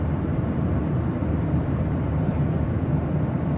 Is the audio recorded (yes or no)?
no